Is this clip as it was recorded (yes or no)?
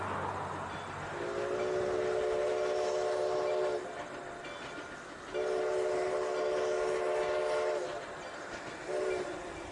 yes